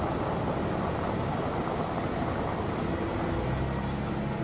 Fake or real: real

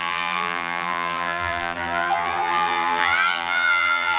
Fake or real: fake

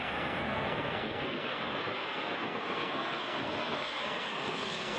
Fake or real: fake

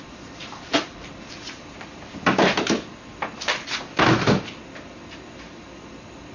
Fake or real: real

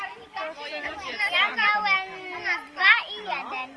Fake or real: real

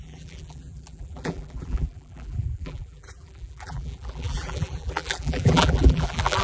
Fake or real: fake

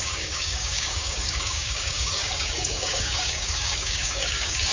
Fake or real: fake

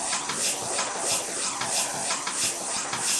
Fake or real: real